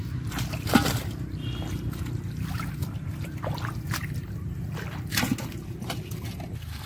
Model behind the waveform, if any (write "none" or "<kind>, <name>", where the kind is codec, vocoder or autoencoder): none